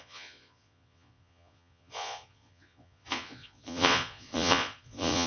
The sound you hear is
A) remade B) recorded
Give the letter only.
A